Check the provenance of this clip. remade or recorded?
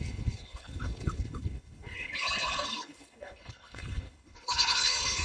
remade